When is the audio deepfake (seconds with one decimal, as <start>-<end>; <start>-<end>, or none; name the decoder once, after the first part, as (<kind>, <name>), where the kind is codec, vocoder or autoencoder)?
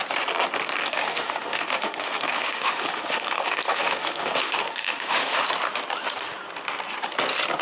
0.8-5.4 (autoencoder, DAC-VAE)